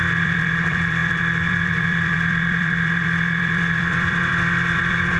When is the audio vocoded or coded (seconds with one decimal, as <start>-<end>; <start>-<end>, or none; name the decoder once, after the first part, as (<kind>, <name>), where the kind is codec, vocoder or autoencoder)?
0.0-5.2 (vocoder, BigVGAN v2)